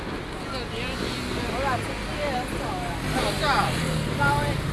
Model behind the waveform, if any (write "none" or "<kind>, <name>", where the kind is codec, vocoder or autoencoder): none